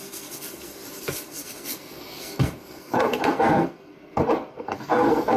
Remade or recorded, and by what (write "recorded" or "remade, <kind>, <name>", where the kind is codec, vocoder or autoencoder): remade, codec, SNAC